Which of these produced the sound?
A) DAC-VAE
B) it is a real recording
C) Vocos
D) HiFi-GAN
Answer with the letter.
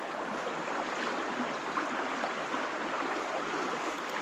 B